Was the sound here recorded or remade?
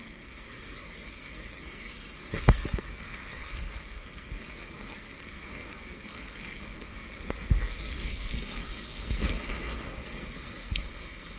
remade